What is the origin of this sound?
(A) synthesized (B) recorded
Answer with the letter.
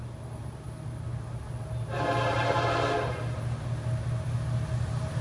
B